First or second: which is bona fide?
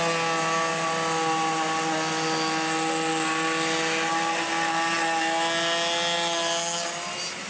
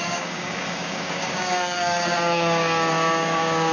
first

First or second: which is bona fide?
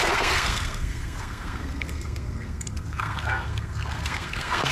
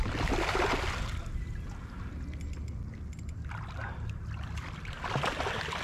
second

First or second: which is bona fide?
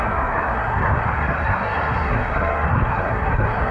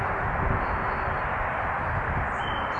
second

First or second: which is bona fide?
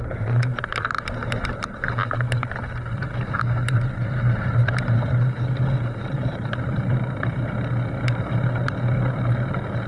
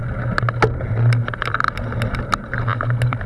second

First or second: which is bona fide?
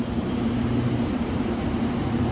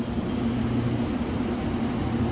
second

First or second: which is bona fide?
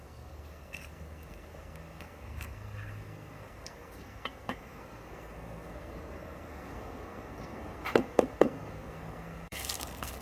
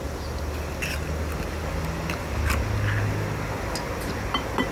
second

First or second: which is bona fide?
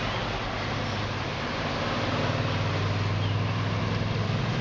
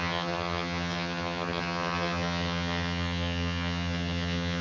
first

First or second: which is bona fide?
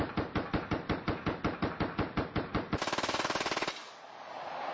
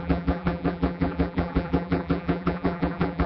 first